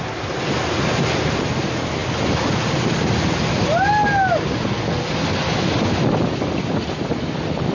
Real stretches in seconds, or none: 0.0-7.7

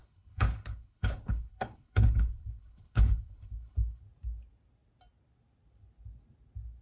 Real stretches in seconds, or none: 4.0-6.8